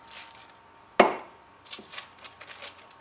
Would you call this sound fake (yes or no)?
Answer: no